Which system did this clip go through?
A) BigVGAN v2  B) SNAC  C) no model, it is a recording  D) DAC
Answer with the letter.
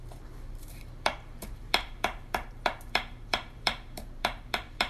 A